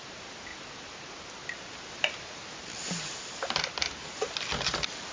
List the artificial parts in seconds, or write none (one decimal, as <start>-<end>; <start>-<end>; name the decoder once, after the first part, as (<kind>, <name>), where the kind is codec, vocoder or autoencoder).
none